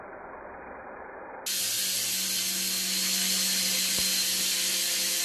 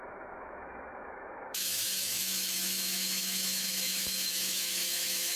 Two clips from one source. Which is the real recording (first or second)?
first